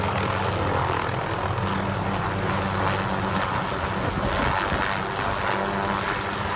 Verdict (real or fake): real